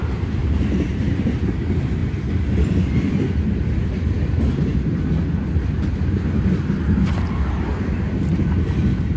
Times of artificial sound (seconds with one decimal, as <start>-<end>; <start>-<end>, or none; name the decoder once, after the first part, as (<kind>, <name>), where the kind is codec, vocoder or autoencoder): 0.4-1.6 (vocoder, BigVGAN v2)